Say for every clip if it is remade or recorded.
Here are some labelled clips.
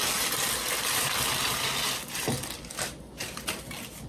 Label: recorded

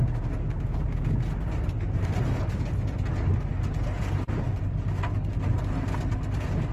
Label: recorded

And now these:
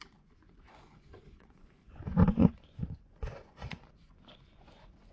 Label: remade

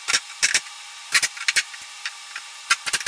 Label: recorded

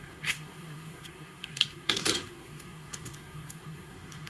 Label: remade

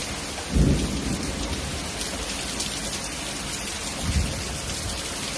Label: recorded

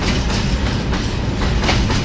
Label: recorded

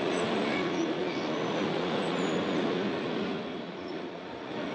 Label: remade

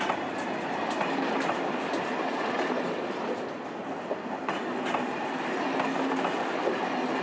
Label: recorded